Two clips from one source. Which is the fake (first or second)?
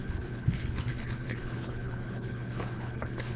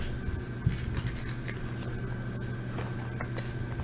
first